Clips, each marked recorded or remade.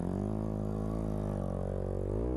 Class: remade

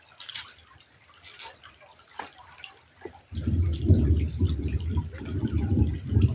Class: recorded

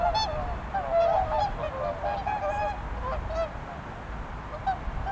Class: recorded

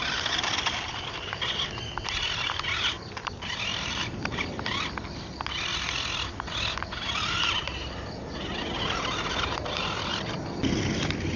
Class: recorded